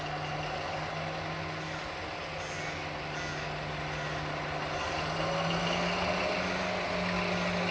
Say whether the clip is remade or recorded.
recorded